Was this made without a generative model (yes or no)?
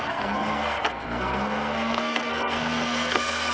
no